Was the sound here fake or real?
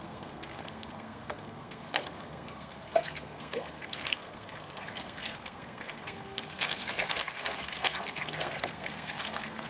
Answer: fake